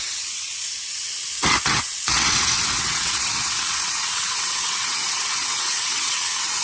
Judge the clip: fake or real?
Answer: fake